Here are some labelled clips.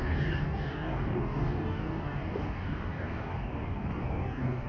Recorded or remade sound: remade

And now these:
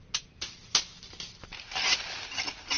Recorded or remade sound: recorded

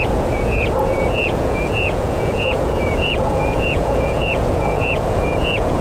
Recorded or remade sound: remade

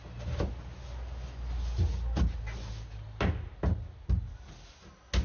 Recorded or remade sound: recorded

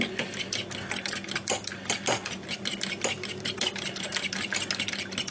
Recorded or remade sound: recorded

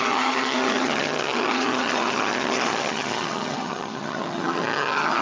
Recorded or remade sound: remade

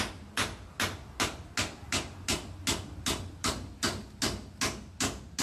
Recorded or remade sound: recorded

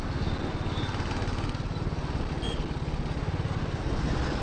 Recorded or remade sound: recorded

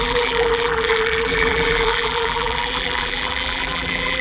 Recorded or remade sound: remade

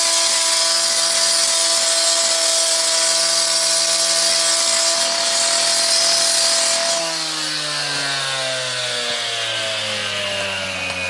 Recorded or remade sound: recorded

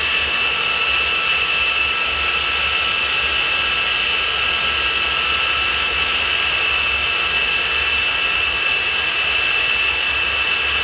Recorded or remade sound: recorded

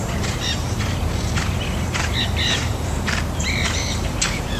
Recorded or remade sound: remade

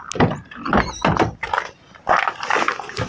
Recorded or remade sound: recorded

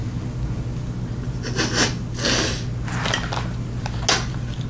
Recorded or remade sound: recorded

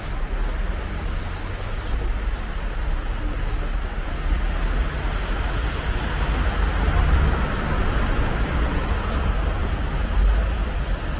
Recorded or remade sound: recorded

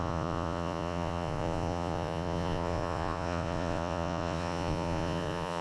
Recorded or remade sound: remade